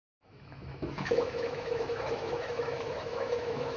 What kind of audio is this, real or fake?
fake